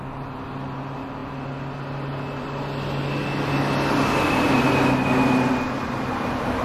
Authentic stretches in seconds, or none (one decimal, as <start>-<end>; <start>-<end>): 0.0-6.6